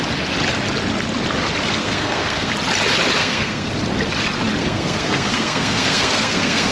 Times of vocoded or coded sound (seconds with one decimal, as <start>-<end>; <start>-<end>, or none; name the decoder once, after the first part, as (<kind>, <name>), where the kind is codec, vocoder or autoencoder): 1.8-2.5 (codec, SNAC); 3.2-3.7; 4.6-6.7